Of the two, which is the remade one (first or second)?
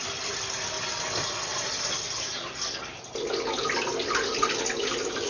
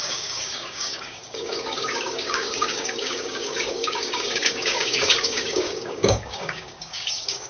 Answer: second